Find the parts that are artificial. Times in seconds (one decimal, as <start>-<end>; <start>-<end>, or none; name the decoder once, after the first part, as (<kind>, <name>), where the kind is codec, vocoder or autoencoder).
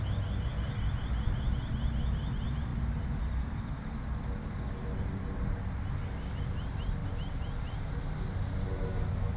2.7-5.9 (vocoder, BigVGAN v2)